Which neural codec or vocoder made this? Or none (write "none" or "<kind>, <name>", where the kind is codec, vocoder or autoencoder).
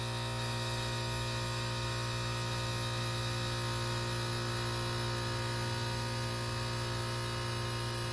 none